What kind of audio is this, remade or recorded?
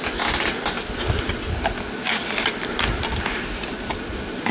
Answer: recorded